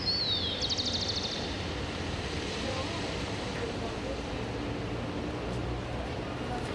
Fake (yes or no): no